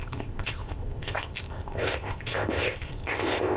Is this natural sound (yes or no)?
no